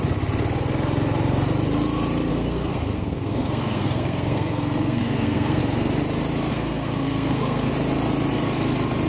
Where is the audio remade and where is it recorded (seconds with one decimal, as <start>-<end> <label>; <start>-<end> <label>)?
0.0-2.3 recorded; 2.3-5.6 remade; 5.6-6.5 recorded; 6.5-7.7 remade; 7.7-9.1 recorded

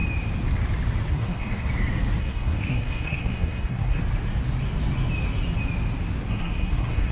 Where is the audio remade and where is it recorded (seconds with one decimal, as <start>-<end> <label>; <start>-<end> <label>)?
0.0-1.1 recorded; 1.1-1.7 remade; 1.7-2.2 recorded; 2.2-4.0 remade; 4.0-6.3 recorded; 6.3-7.1 remade

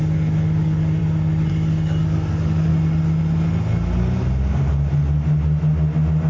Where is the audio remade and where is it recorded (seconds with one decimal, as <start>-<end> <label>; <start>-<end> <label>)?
0.0-1.0 remade; 1.0-1.5 recorded; 1.5-2.7 remade; 2.7-6.3 recorded

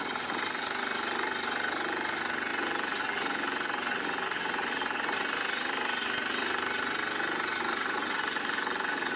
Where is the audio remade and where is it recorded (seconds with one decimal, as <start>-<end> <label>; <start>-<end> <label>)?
0.0-9.2 recorded

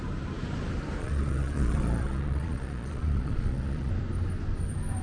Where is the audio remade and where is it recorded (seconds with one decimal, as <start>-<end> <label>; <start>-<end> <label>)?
0.0-1.0 recorded; 1.0-3.9 remade; 3.9-5.0 recorded

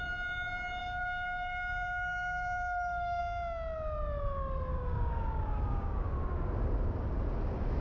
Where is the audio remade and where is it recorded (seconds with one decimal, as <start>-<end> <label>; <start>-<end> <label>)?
0.0-0.8 recorded; 0.8-3.2 remade; 3.2-4.7 recorded; 4.7-6.1 remade; 6.1-7.8 recorded

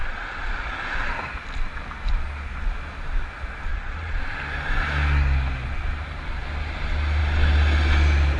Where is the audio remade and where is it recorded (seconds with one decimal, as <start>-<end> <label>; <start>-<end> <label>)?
0.0-1.1 remade; 1.1-3.7 recorded; 3.7-4.2 remade; 4.2-8.4 recorded